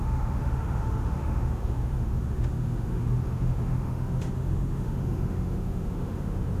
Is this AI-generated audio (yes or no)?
yes